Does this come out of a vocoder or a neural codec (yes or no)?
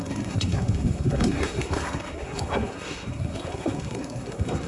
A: yes